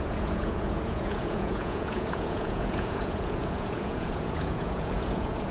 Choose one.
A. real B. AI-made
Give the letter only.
B